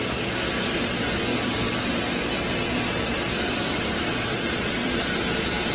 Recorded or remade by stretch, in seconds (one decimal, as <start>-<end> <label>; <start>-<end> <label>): 0.0-4.3 recorded; 4.3-5.1 remade; 5.1-5.7 recorded